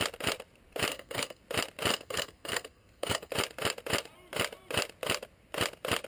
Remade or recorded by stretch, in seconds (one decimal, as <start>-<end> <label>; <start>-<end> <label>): 0.0-0.9 recorded; 0.9-1.4 remade; 1.4-1.9 recorded; 1.9-3.3 remade; 3.3-6.1 recorded